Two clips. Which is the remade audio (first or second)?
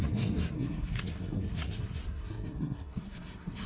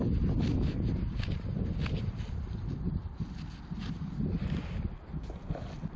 first